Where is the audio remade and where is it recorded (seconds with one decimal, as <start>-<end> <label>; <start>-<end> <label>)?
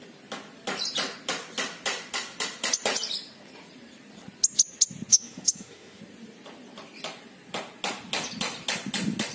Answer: 0.0-5.1 recorded; 5.1-6.0 remade; 6.0-9.3 recorded